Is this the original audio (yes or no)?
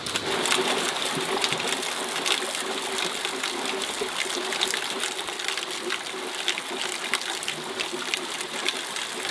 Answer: yes